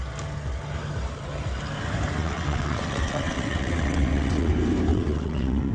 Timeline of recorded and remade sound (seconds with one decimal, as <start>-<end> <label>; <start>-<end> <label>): 0.0-2.2 recorded; 2.2-4.5 remade; 4.5-4.9 recorded; 4.9-5.7 remade